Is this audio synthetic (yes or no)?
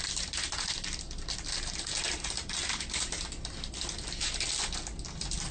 no